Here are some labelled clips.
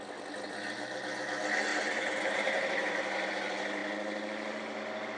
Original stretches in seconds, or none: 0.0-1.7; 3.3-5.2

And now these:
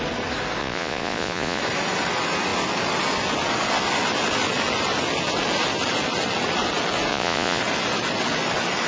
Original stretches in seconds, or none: 0.0-0.6; 1.6-7.1; 7.6-8.9

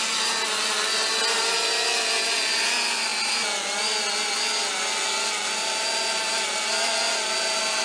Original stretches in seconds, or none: 0.0-7.8